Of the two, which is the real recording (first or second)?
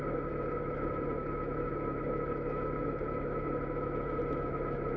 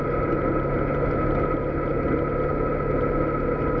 second